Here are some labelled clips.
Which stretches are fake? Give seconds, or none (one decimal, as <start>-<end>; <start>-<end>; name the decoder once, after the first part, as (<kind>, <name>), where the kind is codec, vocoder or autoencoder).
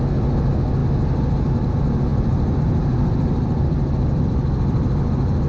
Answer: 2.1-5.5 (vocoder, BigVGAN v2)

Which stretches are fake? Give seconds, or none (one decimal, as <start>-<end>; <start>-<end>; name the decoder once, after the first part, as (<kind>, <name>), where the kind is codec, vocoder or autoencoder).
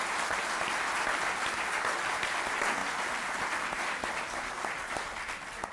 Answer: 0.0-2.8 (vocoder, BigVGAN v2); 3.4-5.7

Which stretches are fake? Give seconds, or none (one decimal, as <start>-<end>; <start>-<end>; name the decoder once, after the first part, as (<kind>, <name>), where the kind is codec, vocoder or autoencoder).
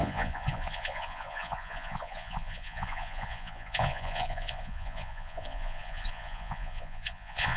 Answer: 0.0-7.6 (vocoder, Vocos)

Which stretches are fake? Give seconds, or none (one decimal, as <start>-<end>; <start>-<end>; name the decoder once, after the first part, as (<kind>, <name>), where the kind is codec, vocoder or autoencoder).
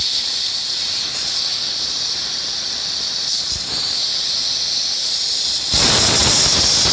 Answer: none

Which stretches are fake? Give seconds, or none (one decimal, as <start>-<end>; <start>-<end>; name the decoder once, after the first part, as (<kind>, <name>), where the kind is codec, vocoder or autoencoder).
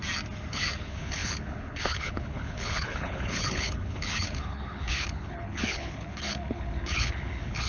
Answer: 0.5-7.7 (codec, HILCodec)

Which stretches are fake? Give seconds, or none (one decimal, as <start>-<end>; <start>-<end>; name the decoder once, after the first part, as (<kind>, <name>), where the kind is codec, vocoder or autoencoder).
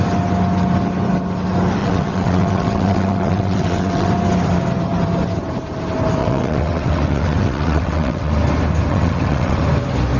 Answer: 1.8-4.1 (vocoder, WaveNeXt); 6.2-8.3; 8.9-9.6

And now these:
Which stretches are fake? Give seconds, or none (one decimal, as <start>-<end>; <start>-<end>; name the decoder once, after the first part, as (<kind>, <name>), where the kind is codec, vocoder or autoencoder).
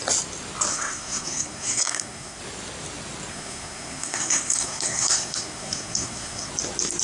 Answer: 0.7-2.4 (codec, SNAC); 3.3-6.5